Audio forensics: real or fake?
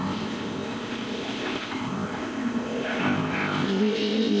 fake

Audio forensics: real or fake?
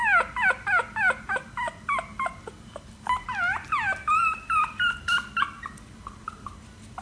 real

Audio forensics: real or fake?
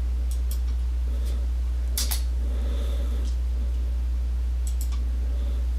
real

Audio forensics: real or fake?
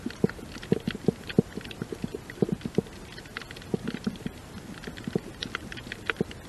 real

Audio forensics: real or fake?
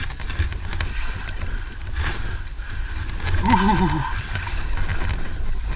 real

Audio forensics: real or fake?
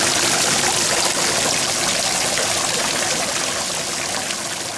real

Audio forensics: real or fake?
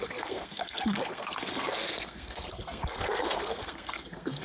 fake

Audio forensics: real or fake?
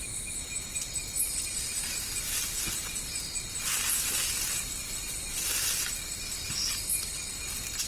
real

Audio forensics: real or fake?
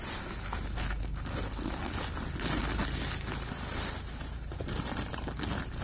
real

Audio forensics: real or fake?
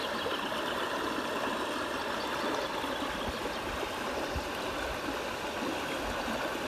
real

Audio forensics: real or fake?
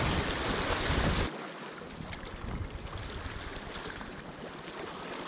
real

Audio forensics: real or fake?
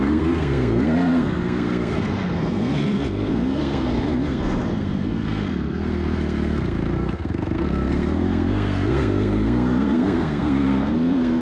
fake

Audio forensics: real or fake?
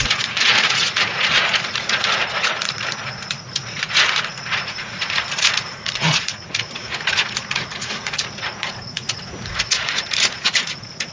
fake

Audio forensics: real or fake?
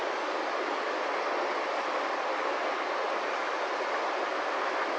real